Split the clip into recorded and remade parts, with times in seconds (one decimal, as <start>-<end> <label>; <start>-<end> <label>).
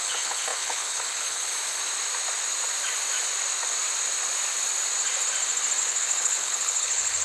0.0-1.5 remade; 1.5-5.8 recorded; 5.8-7.2 remade